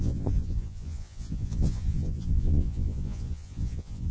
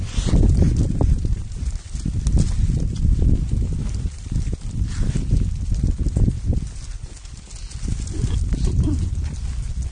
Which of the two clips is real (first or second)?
second